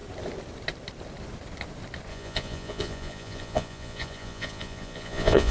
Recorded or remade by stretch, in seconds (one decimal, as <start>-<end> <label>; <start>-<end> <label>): 0.0-2.1 recorded; 2.1-5.5 remade